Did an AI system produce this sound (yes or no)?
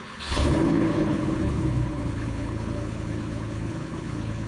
yes